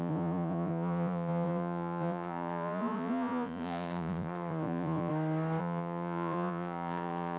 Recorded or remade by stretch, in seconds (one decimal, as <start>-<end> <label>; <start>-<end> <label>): 0.0-5.1 remade; 5.1-5.6 recorded; 5.6-7.4 remade